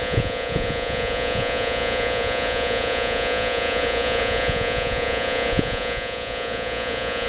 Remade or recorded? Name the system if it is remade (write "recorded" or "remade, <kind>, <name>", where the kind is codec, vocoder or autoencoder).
remade, vocoder, Vocos